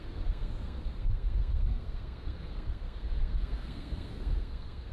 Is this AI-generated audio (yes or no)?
yes